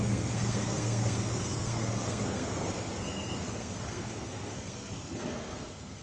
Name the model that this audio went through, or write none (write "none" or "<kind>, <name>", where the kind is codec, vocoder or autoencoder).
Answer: codec, SNAC